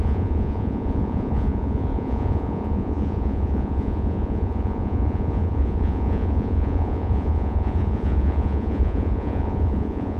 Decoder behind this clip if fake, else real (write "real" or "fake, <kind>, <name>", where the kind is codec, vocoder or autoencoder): fake, vocoder, Vocos